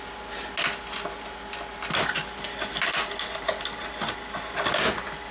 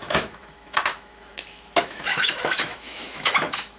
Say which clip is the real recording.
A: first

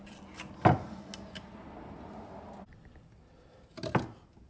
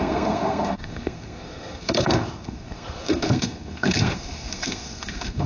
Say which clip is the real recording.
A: first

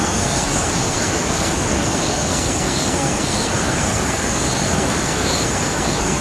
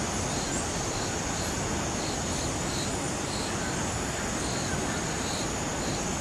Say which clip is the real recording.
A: second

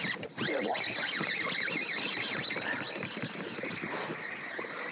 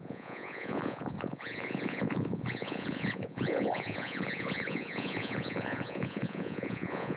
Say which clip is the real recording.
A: first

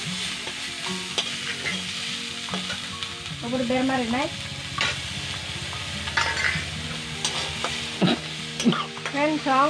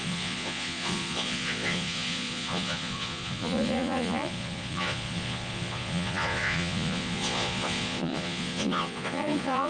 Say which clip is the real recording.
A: first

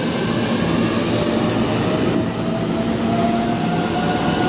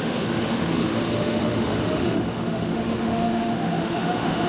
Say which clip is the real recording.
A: first